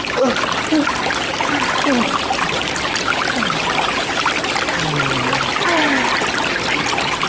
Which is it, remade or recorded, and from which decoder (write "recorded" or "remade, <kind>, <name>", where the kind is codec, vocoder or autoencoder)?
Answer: recorded